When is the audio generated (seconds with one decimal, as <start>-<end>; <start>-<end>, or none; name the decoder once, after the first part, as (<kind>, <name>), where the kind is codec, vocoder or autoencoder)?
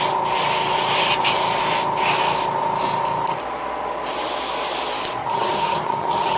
5.2-6.4 (vocoder, HiFi-GAN)